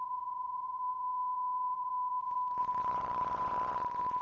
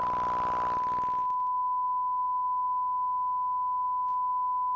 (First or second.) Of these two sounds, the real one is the second